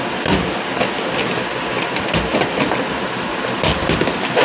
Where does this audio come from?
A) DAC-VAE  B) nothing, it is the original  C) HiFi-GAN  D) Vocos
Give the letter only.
B